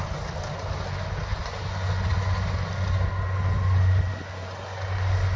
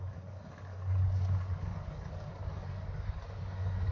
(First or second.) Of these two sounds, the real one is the first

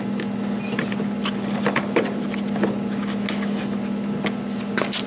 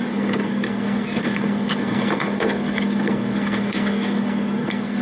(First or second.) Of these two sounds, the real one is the first